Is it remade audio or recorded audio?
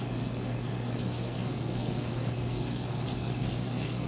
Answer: remade